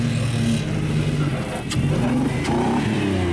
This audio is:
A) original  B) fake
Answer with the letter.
A